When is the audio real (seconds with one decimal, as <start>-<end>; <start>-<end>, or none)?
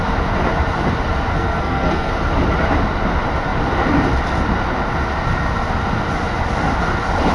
0.0-1.3; 2.1-7.3